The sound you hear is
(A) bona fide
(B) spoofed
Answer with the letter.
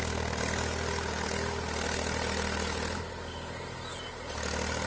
A